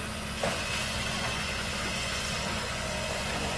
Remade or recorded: remade